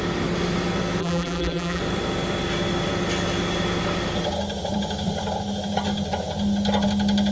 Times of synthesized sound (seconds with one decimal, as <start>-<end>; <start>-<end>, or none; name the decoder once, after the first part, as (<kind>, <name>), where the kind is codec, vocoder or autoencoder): 1.0-1.8 (vocoder, BigVGAN v2)